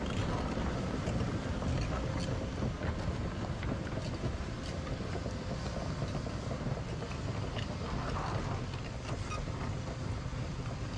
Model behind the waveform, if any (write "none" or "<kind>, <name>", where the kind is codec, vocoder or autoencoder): none